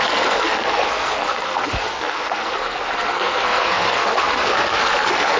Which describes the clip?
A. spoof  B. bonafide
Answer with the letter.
A